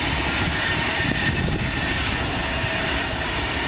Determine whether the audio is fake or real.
real